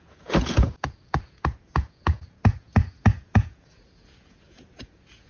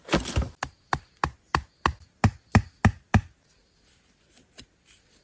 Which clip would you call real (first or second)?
second